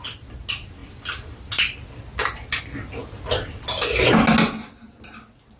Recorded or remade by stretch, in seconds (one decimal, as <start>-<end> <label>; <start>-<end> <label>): 0.0-5.6 recorded